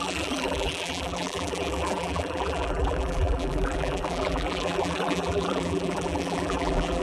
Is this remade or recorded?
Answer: remade